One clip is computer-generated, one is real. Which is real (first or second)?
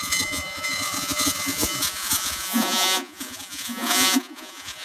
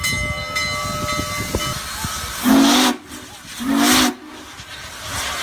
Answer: second